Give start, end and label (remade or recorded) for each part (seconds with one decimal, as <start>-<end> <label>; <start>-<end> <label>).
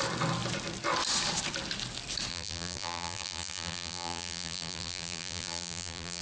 0.0-2.3 recorded; 2.3-6.2 remade